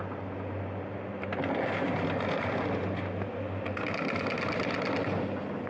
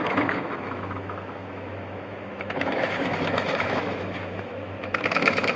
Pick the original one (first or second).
first